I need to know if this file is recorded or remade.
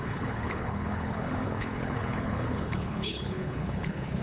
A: remade